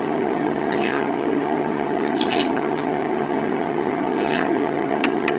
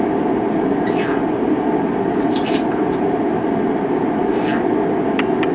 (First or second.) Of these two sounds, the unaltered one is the second